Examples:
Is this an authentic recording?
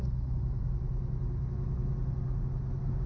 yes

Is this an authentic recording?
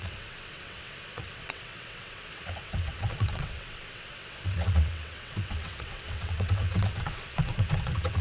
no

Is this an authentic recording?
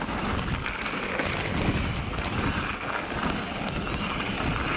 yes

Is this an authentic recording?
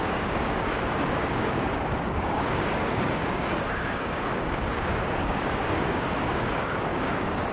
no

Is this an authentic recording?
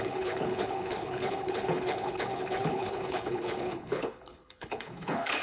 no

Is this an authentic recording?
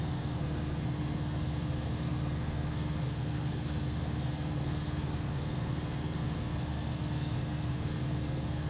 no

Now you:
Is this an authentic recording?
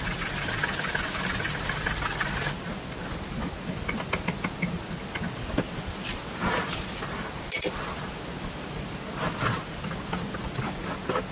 yes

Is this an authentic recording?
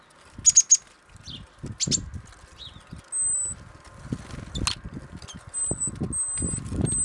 yes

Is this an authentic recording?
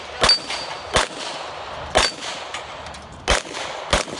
yes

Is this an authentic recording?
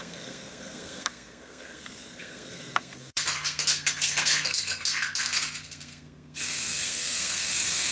no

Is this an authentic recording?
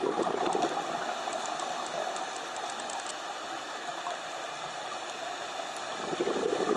yes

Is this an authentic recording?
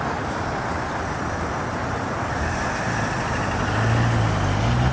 yes